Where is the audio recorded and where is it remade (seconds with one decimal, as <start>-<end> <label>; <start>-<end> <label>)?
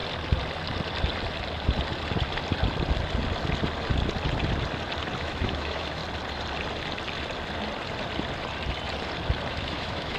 0.0-5.2 recorded; 5.2-6.0 remade; 6.0-9.5 recorded; 9.5-10.2 remade